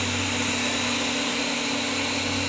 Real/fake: real